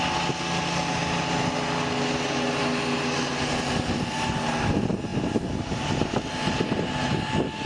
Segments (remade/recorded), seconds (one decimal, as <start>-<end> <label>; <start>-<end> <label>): 0.0-7.7 recorded